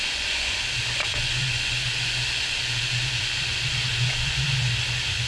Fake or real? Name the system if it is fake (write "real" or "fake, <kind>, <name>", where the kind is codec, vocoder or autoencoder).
fake, vocoder, Vocos